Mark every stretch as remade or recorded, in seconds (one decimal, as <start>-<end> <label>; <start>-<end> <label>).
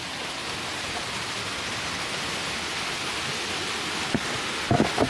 0.0-5.1 recorded